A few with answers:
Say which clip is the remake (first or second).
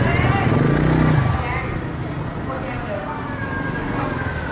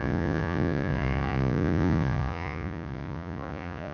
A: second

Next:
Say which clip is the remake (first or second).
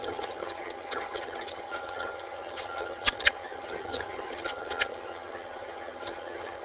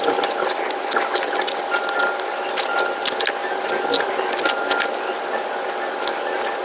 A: first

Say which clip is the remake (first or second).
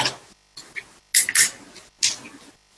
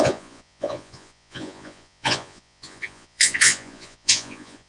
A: second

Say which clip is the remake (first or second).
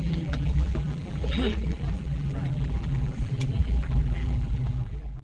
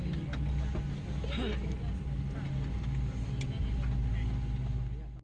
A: first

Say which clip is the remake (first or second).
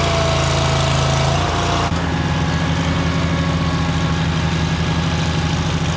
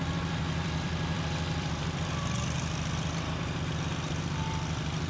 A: second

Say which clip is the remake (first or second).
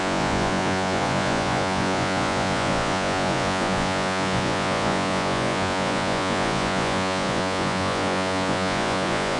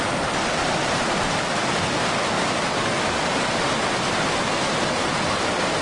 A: first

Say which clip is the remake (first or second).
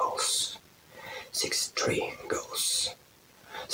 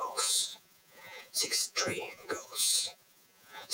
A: second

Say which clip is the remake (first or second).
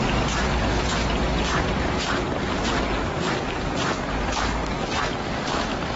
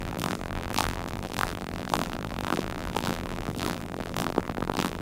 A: second